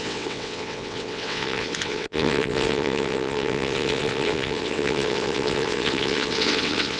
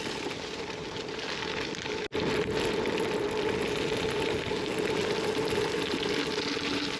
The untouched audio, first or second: second